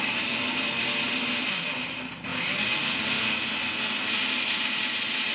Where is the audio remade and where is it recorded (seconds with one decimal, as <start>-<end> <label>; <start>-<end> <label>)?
0.0-5.3 recorded